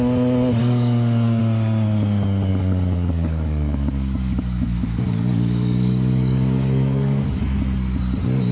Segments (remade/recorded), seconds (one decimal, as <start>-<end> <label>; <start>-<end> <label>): 0.0-0.6 recorded; 0.6-1.4 remade; 1.4-2.5 recorded; 2.5-7.4 remade; 7.4-8.5 recorded